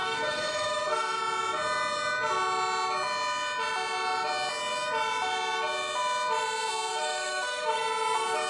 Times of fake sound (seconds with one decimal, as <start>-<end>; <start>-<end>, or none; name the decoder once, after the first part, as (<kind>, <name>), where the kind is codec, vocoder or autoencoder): 0.0-1.2 (autoencoder, DAC-VAE); 6.9-7.8